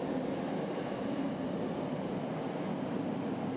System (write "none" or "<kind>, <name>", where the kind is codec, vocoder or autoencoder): none